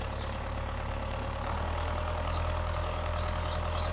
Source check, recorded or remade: remade